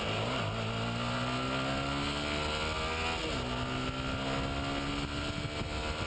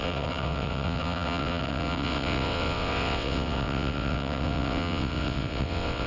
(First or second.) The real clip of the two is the first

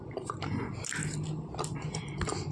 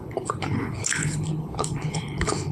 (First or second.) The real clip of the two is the first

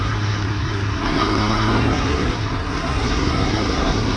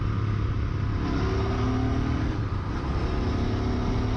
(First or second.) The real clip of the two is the second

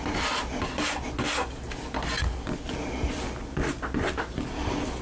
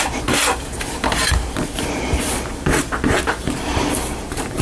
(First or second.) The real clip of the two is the first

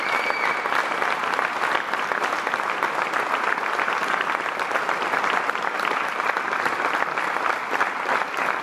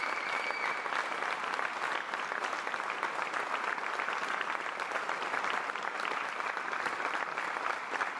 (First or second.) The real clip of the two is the first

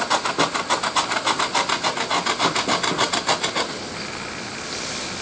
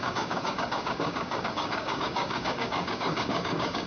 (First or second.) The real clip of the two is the first